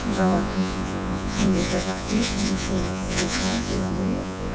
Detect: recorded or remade remade